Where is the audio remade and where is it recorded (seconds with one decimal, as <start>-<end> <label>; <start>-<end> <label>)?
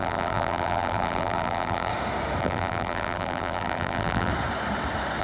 0.0-1.9 remade; 1.9-2.4 recorded; 2.4-4.3 remade; 4.3-5.2 recorded